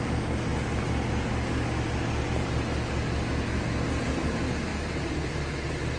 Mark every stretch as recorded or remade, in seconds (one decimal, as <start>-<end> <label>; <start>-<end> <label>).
0.0-4.7 recorded; 4.7-6.0 remade